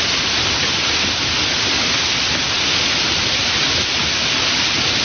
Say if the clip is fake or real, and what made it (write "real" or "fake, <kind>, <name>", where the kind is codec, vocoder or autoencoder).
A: real